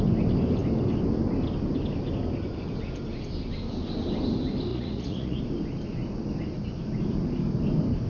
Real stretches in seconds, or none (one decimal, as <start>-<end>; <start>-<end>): 0.0-4.7; 5.4-8.1